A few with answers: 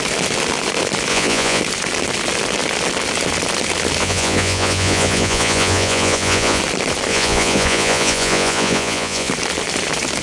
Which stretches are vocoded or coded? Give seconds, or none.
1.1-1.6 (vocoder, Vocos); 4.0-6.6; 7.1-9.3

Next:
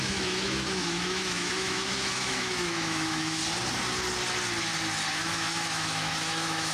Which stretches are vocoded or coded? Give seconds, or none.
0.0-3.4 (autoencoder, DAC-VAE); 5.1-6.7

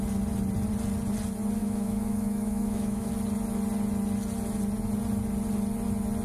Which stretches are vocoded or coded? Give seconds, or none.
1.6-3.1 (autoencoder, DAC-VAE)

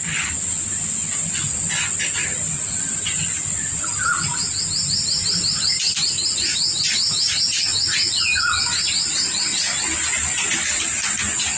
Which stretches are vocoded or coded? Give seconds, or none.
none

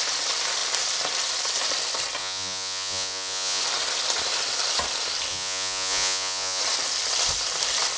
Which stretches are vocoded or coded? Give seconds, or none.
2.2-3.6 (vocoder, Vocos); 5.3-6.6

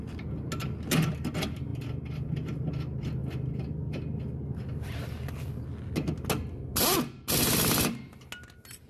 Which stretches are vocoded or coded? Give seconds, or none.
none

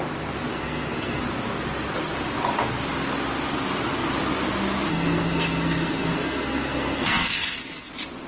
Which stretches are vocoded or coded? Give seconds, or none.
0.5-1.2 (codec, SNAC); 4.9-7.9

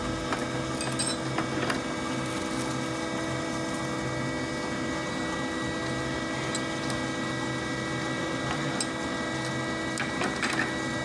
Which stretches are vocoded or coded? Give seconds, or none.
none